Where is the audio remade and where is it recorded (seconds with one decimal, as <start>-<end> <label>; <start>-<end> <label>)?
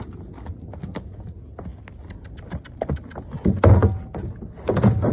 0.0-5.1 recorded